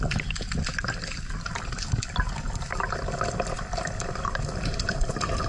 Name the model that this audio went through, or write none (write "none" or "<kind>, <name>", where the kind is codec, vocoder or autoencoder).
none